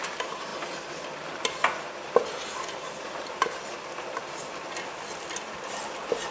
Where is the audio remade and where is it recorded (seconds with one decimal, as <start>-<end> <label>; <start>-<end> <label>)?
0.0-6.3 recorded